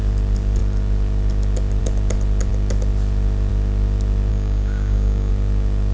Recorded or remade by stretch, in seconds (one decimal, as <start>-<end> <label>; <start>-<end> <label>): 0.0-4.3 recorded; 4.3-5.3 remade; 5.3-5.9 recorded